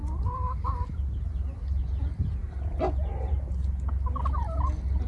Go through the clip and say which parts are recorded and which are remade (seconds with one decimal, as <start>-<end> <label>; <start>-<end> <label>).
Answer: 0.0-5.1 recorded

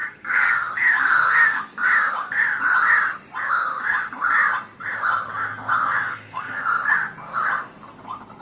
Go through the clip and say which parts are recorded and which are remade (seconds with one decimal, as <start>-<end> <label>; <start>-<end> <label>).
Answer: 0.0-0.7 remade; 0.7-1.1 recorded; 1.1-1.6 remade; 1.6-6.1 recorded; 6.1-6.9 remade; 6.9-8.4 recorded

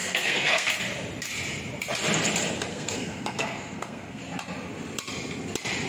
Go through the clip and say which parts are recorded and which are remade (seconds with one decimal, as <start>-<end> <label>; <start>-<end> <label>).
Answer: 0.0-0.7 remade; 0.7-2.7 recorded; 2.7-4.2 remade; 4.2-5.9 recorded

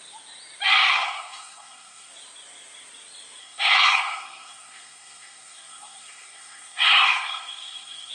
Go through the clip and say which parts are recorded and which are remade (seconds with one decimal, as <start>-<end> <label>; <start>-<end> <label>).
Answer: 0.0-0.9 recorded; 0.9-2.1 remade; 2.1-3.4 recorded; 3.4-8.1 remade

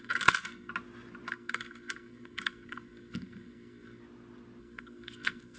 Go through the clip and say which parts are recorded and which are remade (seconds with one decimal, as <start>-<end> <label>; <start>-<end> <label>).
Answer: 0.0-0.7 remade; 0.7-1.3 recorded; 1.3-4.0 remade; 4.0-4.6 recorded; 4.6-5.6 remade

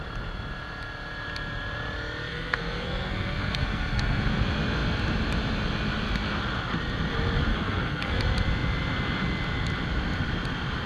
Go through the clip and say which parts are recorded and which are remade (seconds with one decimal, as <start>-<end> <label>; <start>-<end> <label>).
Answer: 0.0-2.3 recorded; 2.3-4.2 remade; 4.2-7.5 recorded; 7.5-8.2 remade; 8.2-10.9 recorded